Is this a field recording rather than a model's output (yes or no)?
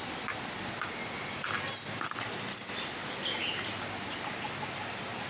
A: yes